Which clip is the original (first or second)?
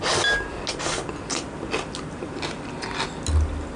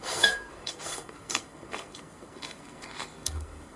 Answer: first